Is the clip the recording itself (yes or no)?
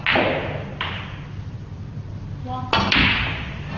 yes